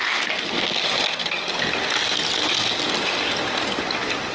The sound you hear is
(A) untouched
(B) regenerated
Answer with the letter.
A